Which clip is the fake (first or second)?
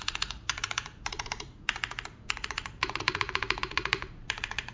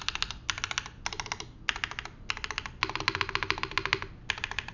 first